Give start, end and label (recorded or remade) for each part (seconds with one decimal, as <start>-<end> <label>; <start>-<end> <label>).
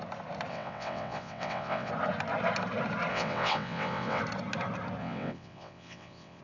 0.0-0.5 recorded; 0.5-1.9 remade; 1.9-3.1 recorded; 3.1-4.2 remade; 4.2-5.0 recorded; 5.0-6.4 remade